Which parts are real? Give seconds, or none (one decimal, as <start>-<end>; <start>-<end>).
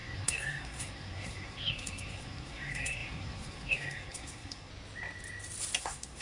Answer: 4.7-5.8